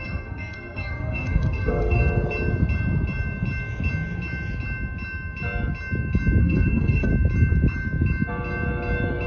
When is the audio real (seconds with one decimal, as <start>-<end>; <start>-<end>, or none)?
2.0-6.4; 7.1-9.3